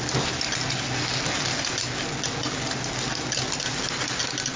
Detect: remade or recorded recorded